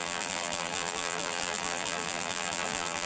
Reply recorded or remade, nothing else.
remade